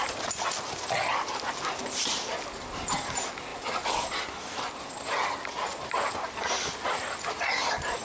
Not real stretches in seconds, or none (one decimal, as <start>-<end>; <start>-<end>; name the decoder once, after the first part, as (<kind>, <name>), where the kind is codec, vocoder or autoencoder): none